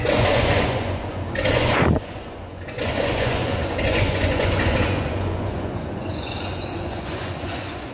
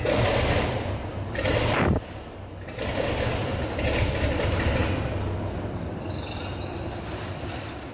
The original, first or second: second